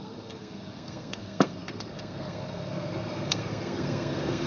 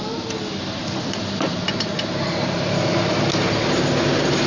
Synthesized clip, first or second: first